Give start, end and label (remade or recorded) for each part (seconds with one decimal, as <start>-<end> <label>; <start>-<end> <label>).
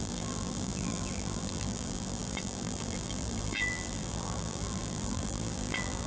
0.0-6.1 remade